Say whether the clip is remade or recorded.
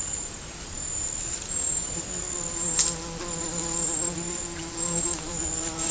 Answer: recorded